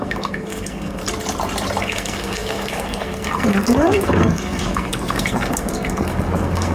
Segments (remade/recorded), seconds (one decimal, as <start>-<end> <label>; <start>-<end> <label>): 0.0-1.0 remade; 1.0-1.8 recorded; 1.8-6.7 remade